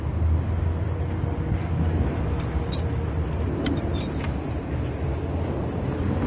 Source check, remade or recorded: recorded